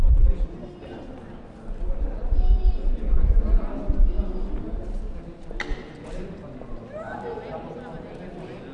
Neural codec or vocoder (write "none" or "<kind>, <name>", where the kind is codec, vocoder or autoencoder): none